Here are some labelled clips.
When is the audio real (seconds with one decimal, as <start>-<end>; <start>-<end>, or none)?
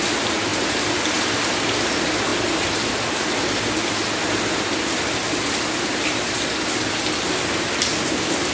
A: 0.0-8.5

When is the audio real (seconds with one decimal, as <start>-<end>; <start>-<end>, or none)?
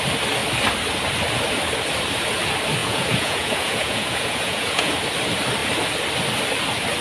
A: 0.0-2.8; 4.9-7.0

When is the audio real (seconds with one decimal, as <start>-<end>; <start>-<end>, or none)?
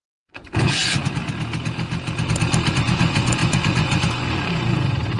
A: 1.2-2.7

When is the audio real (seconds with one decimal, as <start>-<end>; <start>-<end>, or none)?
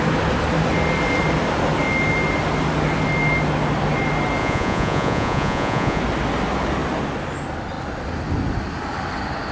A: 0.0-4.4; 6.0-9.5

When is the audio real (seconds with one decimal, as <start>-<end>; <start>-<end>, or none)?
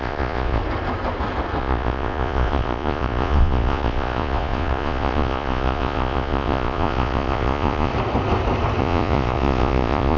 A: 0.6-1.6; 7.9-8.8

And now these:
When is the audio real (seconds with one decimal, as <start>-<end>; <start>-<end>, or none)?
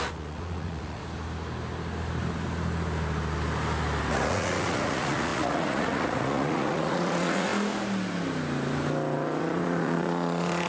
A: 1.0-4.1; 7.5-9.4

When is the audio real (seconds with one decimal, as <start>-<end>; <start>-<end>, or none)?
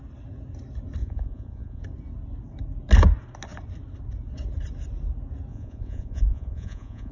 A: 0.0-1.0; 1.8-5.5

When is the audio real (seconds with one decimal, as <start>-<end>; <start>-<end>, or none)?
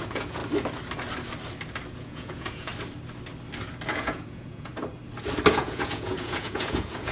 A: 0.4-1.9; 2.7-3.9; 4.7-5.5